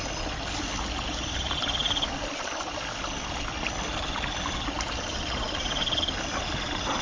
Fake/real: real